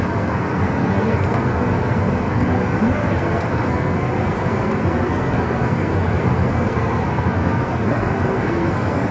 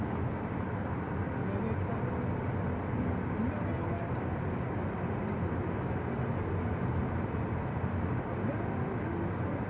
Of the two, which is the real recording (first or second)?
second